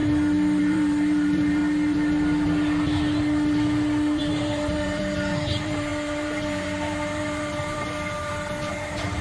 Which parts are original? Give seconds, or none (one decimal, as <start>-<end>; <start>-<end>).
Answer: 0.0-0.6; 1.6-4.2